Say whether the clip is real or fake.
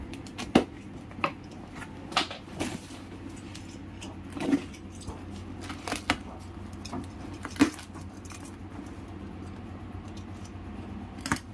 real